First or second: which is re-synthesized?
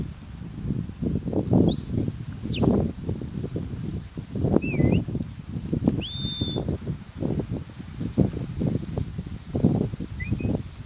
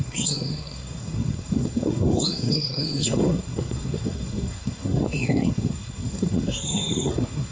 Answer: second